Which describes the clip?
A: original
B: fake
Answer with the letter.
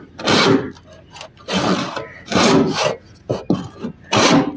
A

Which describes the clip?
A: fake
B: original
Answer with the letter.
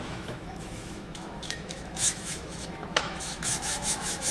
A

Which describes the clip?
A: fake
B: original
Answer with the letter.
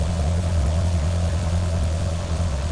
A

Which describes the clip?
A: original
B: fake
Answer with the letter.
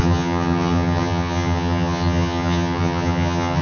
B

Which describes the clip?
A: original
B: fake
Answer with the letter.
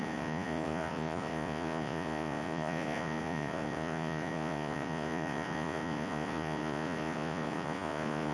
B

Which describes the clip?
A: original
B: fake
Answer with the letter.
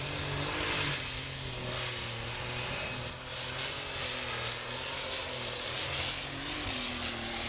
A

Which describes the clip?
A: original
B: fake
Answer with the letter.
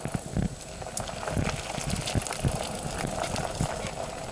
A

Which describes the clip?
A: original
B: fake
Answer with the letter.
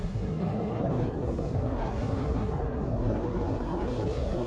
B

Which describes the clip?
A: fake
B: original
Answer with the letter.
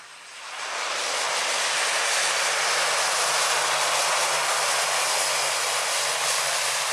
B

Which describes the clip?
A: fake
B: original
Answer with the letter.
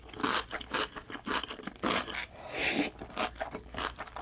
B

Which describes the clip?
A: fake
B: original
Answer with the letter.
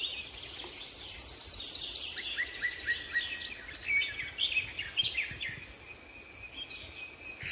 B